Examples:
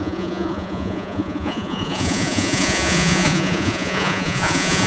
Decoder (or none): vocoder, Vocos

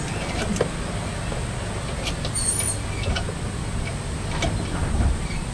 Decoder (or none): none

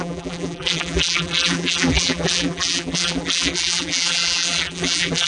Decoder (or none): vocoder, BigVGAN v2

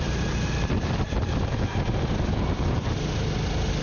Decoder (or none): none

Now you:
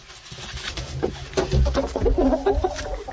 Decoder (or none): none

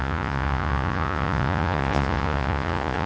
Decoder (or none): vocoder, Vocos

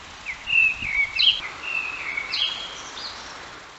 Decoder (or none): none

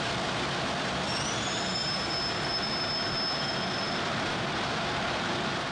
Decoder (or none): none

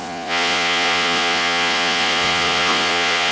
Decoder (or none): vocoder, Vocos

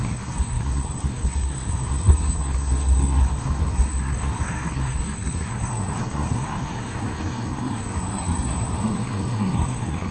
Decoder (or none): codec, SNAC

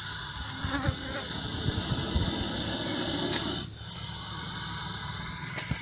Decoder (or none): none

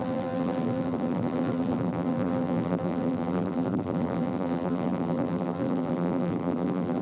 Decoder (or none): vocoder, BigVGAN v2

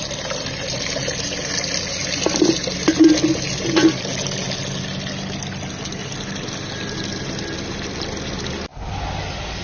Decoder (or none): none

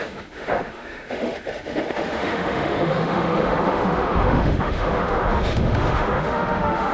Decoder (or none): autoencoder, DAC-VAE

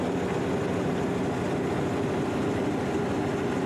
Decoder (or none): none